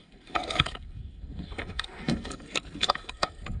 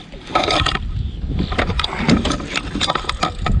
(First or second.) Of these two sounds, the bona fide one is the second